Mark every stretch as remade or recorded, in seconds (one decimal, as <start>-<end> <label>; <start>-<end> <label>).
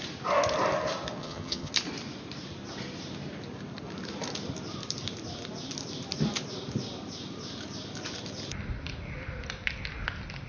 0.0-1.2 recorded; 1.2-1.7 remade; 1.7-10.5 recorded